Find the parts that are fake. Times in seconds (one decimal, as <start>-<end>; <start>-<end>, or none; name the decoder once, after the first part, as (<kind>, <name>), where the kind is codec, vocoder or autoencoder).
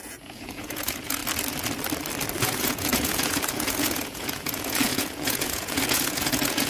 0.0-1.2 (vocoder, Vocos); 2.4-6.7